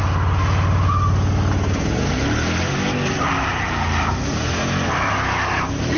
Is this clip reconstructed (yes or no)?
no